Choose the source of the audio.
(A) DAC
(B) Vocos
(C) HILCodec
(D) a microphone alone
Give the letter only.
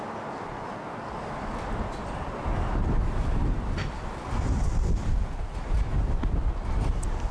D